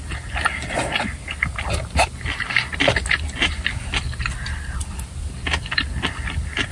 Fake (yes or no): no